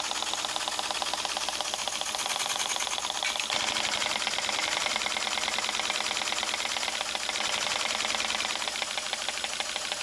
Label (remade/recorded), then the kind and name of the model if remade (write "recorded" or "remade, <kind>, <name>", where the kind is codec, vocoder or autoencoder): recorded